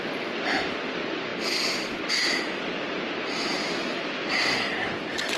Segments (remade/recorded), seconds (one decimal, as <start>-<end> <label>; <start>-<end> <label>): 0.0-3.6 recorded; 3.6-4.3 remade; 4.3-5.4 recorded